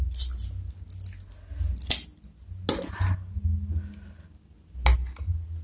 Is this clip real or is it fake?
real